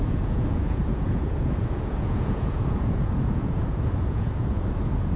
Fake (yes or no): yes